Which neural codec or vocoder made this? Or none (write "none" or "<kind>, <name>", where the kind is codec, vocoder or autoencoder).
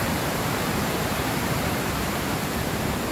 vocoder, BigVGAN v2